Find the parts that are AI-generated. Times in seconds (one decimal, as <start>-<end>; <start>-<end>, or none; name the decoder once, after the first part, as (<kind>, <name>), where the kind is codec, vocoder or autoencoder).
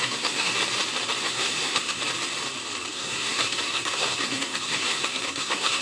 0.0-0.5 (codec, SNAC); 1.2-2.0; 2.9-5.8